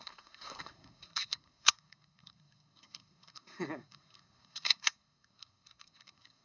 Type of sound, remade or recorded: remade